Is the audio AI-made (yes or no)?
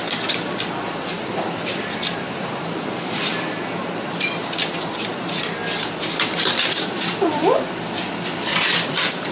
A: yes